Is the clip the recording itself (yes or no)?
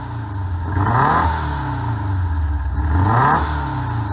yes